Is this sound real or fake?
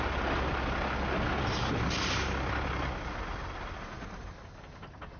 real